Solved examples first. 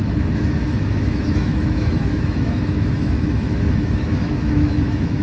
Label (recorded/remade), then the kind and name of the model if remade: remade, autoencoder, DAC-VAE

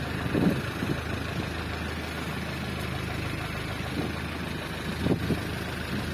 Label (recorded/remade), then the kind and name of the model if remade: recorded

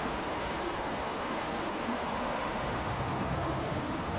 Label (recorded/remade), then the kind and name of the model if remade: remade, autoencoder, DAC-VAE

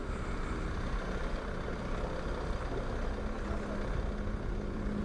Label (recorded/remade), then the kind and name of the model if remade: recorded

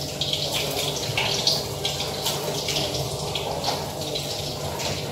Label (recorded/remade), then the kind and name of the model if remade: recorded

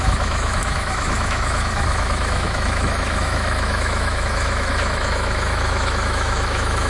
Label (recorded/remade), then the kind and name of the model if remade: remade, autoencoder, DAC-VAE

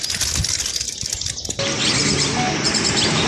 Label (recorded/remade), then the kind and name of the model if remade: recorded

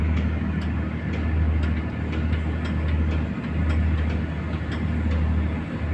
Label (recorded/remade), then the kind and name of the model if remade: recorded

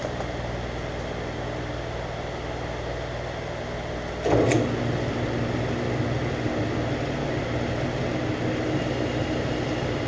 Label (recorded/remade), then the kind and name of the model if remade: recorded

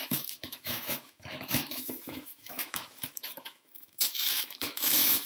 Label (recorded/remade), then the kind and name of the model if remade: remade, autoencoder, DAC-VAE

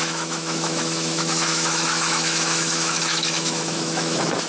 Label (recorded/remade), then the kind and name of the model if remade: remade, autoencoder, DAC-VAE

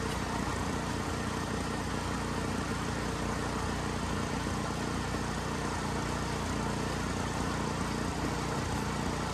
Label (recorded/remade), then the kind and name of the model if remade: recorded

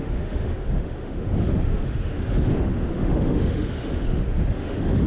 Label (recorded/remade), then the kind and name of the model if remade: remade, autoencoder, DAC-VAE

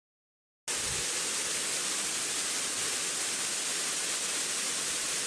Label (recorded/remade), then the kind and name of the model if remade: recorded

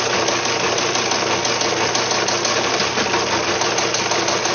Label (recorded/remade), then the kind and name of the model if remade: recorded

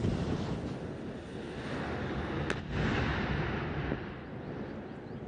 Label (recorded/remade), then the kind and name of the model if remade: recorded